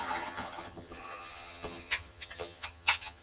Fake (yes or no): yes